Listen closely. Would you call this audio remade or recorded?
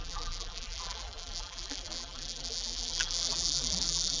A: remade